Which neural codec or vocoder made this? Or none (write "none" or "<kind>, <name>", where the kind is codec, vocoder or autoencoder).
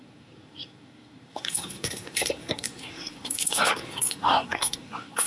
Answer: codec, SNAC